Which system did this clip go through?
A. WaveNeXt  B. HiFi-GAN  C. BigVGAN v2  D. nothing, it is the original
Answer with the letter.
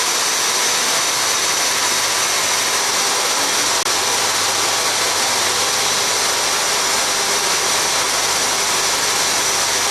D